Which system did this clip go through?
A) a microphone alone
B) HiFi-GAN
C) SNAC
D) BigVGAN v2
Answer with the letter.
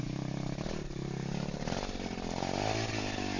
A